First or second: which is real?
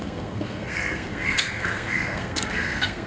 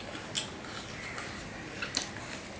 second